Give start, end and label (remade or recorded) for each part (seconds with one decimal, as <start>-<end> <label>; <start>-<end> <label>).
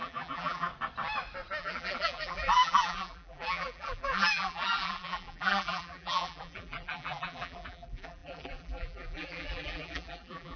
0.0-0.7 remade; 0.7-1.6 recorded; 1.6-10.6 remade